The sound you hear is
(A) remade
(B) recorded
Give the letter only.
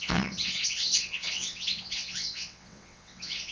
A